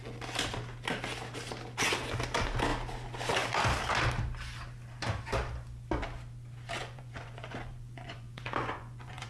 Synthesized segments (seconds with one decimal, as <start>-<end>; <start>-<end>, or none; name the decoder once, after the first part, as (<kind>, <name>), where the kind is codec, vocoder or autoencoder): 6.8-9.3 (vocoder, Vocos)